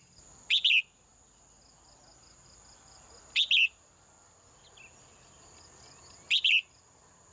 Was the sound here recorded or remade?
recorded